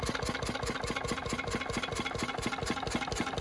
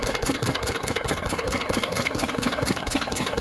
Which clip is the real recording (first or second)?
first